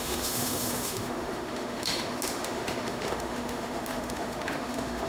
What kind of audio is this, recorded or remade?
remade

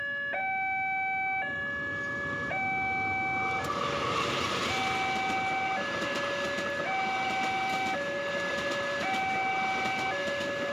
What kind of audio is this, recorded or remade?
recorded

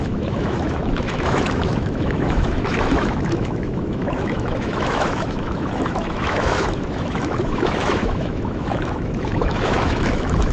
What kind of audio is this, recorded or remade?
remade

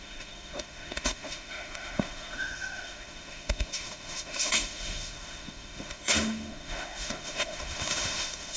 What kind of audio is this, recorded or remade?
remade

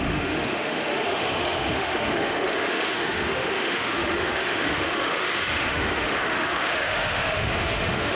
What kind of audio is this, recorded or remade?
remade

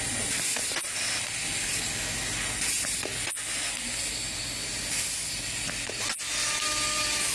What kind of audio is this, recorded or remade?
recorded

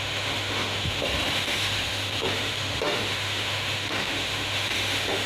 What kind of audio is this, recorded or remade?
remade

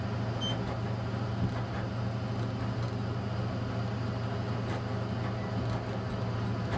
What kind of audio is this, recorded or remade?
recorded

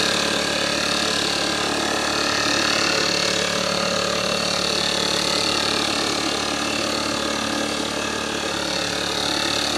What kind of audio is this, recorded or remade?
recorded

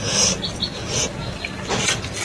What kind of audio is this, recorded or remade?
recorded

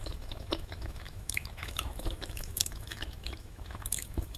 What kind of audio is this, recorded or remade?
remade